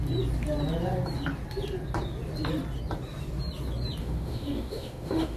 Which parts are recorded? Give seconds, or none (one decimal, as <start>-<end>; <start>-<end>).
0.0-4.0